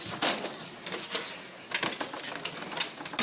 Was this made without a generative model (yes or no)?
yes